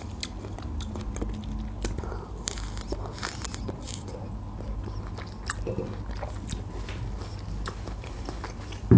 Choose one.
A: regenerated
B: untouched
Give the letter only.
B